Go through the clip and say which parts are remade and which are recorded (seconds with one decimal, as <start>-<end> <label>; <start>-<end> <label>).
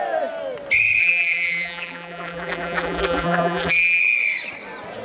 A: 0.0-1.0 recorded; 1.0-4.0 remade; 4.0-5.0 recorded